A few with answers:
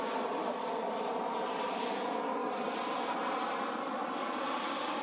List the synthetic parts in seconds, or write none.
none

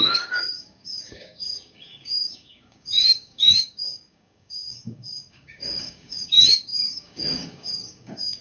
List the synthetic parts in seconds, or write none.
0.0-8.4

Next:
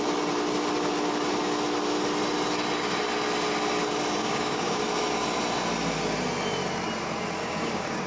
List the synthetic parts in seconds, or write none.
4.2-4.8; 7.4-8.1

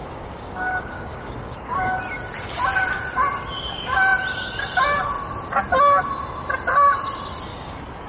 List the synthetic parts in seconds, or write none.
0.0-2.0; 7.5-8.1

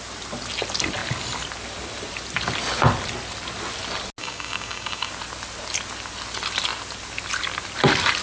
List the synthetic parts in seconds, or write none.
4.2-5.1